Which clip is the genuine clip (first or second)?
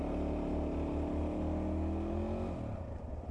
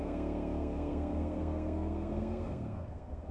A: first